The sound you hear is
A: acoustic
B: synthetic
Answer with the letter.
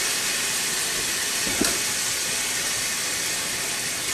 A